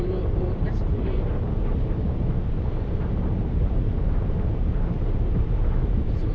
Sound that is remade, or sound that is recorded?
remade